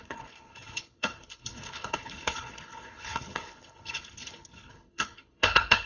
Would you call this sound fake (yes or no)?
yes